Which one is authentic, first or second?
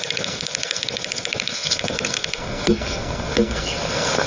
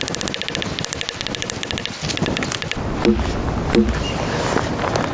second